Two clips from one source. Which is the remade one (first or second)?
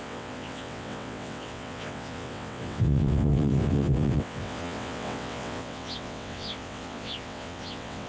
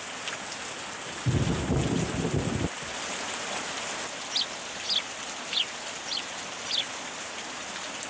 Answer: first